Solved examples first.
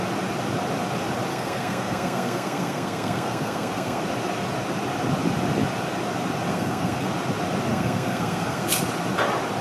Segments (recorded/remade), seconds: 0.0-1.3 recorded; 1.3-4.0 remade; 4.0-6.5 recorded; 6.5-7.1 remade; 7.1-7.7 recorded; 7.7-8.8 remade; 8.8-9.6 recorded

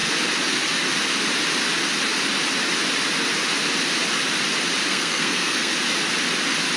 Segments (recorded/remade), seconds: 0.0-4.9 recorded; 4.9-5.7 remade; 5.7-6.8 recorded

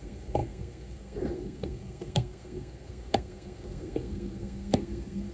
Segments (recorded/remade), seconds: 0.0-5.3 remade